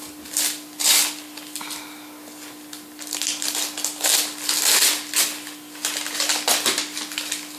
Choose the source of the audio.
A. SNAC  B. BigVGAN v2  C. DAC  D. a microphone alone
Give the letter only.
D